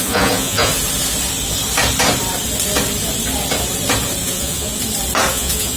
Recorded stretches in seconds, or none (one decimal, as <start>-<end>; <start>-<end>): 0.7-4.2; 4.7-5.3